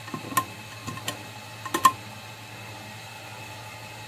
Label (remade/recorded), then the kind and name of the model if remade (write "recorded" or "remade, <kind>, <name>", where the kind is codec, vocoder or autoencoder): recorded